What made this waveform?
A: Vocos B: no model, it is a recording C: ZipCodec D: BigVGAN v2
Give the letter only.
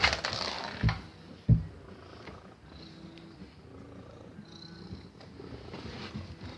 B